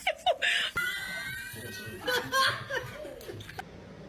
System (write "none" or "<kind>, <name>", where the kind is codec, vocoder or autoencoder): none